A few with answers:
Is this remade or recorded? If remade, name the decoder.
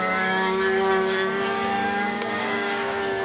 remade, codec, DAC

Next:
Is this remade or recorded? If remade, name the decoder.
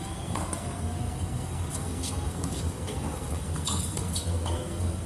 remade, codec, SNAC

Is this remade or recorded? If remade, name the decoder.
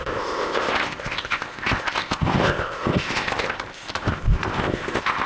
remade, codec, ZipCodec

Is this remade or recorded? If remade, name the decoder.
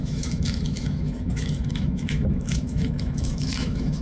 remade, autoencoder, DAC-VAE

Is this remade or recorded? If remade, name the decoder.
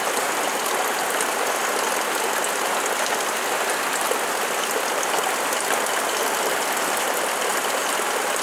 recorded